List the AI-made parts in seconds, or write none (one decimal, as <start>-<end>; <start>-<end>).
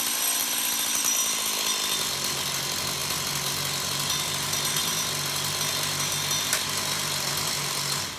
none